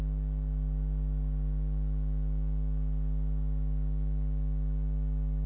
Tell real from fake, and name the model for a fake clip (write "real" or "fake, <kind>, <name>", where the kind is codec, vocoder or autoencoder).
real